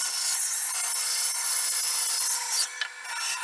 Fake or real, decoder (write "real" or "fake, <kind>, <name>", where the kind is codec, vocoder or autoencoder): real